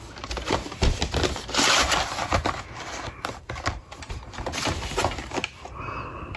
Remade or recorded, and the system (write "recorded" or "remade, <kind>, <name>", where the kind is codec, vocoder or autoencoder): recorded